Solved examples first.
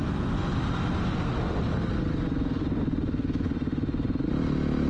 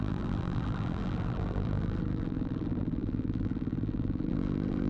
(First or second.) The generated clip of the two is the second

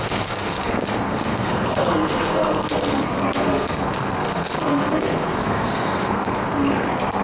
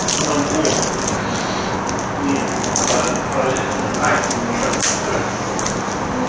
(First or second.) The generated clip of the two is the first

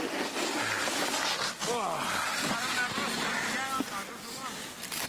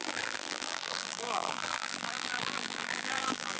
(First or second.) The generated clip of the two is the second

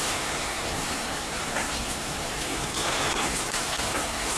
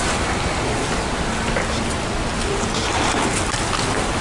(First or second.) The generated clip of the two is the first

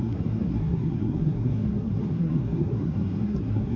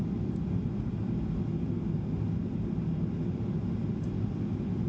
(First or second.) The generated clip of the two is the first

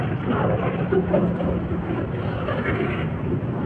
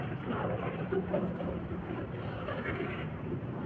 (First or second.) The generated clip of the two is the second